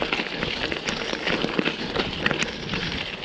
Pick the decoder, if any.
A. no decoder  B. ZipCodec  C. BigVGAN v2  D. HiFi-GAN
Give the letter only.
A